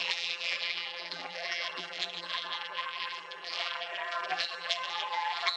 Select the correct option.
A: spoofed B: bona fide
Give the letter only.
A